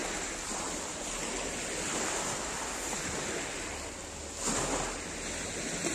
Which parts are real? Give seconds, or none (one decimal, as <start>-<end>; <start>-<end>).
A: 0.0-5.9